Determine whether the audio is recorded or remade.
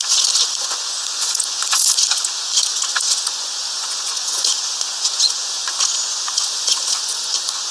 remade